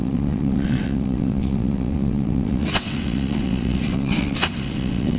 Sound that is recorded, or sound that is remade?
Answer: remade